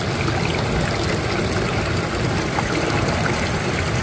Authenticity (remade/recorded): recorded